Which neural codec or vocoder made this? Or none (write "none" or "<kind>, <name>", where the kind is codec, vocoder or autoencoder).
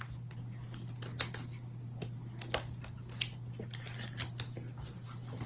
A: none